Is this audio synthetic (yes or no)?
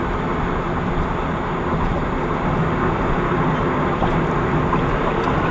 no